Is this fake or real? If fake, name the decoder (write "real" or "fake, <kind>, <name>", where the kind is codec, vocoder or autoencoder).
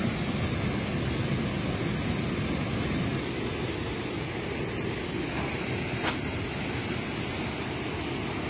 real